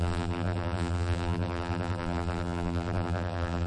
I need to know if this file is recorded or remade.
remade